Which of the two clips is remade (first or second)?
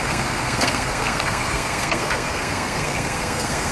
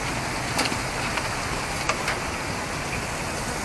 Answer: first